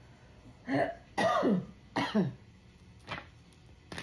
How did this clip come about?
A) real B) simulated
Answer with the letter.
A